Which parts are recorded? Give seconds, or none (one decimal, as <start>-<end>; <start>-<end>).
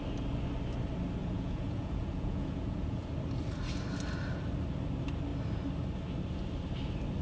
0.0-1.2; 3.1-7.2